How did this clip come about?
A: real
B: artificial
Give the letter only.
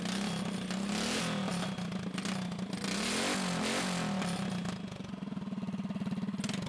A